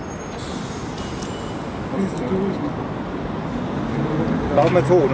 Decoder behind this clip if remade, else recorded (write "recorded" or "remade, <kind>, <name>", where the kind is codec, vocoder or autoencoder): recorded